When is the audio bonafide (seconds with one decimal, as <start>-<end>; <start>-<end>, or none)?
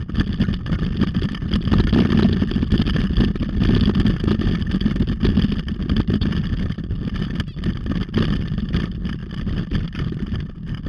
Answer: 0.0-10.9